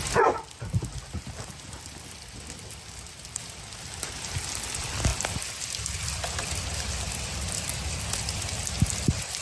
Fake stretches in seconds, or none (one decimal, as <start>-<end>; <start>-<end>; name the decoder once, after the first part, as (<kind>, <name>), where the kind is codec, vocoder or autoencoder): none